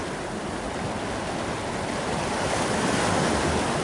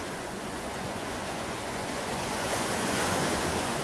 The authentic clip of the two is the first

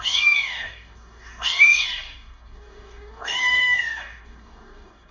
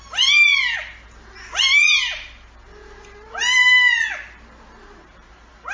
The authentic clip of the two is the second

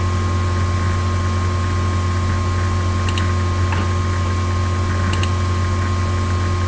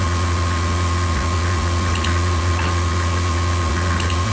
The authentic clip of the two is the first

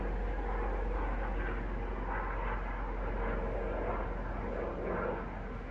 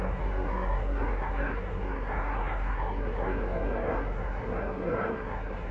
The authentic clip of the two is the first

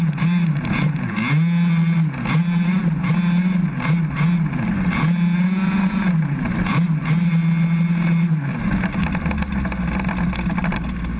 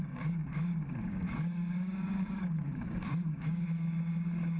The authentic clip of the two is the first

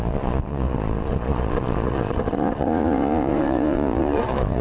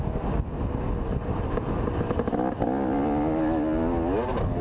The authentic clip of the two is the second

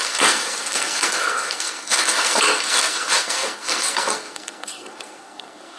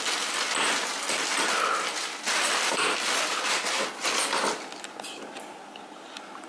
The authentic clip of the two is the second